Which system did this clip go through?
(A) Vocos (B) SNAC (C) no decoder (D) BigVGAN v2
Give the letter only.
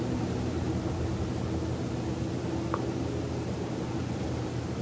C